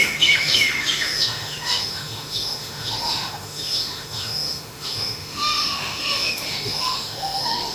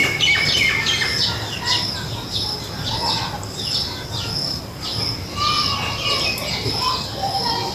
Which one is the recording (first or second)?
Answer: second